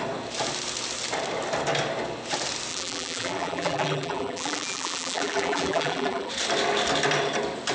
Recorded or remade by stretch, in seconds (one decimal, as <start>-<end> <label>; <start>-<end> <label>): 0.0-2.7 recorded; 2.7-6.3 remade; 6.3-7.7 recorded